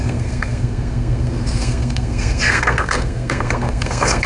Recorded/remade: remade